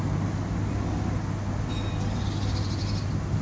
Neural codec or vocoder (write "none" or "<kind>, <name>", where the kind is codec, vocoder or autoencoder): none